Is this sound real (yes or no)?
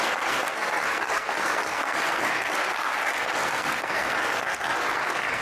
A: no